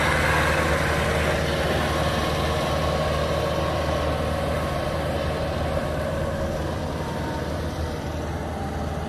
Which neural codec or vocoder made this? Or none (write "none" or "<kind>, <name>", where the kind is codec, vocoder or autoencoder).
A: none